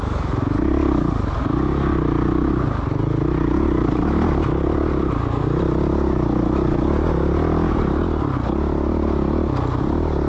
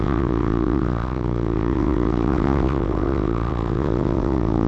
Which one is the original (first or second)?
first